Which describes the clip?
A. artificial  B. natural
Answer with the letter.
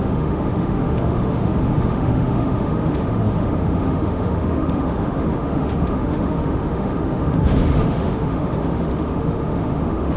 A